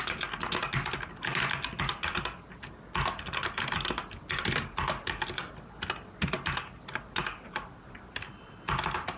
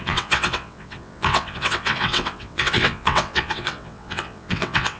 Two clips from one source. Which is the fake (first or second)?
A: second